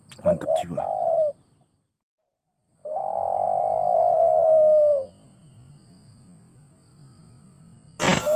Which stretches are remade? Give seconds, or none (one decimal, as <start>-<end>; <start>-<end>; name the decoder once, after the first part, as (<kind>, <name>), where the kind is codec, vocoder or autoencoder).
none